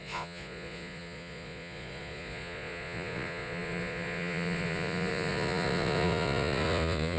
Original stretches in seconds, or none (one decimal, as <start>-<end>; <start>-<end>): none